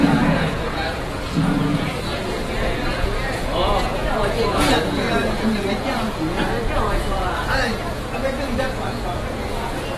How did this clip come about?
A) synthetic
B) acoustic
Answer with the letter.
A